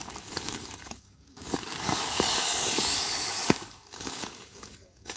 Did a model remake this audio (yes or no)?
yes